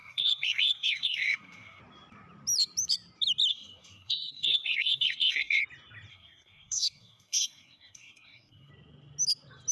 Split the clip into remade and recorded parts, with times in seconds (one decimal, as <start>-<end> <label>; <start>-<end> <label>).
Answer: 0.0-1.8 remade; 1.8-3.5 recorded; 3.5-5.6 remade; 5.6-6.1 recorded; 6.1-8.7 remade; 8.7-9.7 recorded